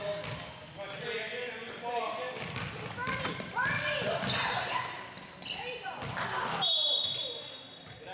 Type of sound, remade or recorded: recorded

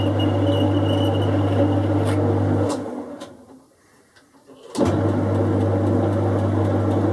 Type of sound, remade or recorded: recorded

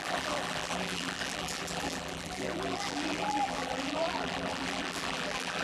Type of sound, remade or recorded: remade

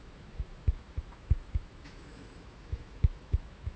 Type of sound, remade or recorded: remade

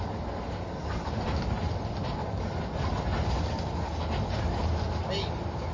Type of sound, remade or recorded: recorded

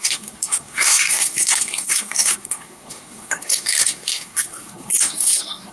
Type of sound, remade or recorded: remade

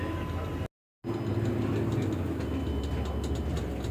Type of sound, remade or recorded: recorded